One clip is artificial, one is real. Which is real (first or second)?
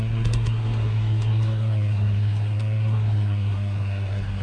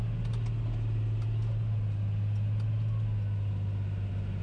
second